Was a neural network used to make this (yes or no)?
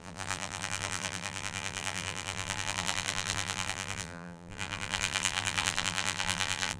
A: yes